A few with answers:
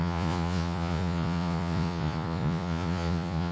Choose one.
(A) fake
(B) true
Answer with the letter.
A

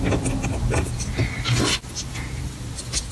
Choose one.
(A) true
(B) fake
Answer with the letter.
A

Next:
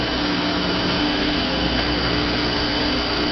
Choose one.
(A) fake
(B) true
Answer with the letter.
A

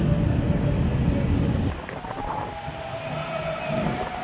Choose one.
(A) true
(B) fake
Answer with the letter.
A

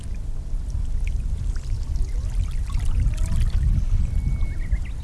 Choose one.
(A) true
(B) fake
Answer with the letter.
A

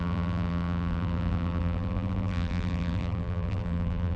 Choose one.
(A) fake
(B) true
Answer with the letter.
A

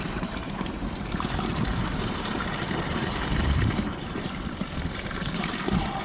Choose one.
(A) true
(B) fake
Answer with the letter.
B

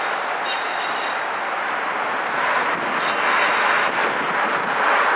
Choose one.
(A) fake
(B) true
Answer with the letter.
B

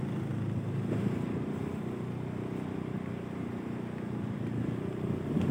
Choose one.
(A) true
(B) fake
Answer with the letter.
A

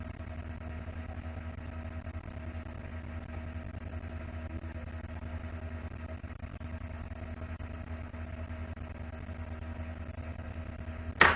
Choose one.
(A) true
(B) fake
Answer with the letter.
A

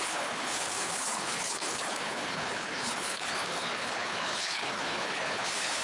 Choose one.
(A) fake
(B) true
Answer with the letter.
A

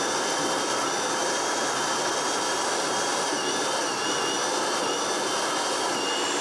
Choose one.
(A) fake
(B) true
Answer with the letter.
B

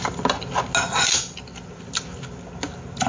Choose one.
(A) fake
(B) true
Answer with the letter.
B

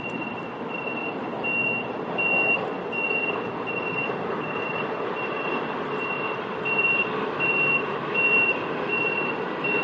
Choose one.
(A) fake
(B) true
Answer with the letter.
B